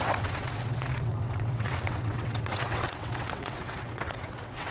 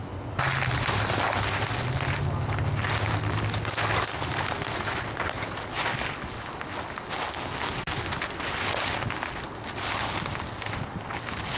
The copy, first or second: first